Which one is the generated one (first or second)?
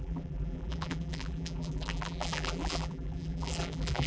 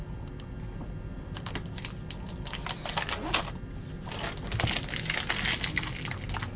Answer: first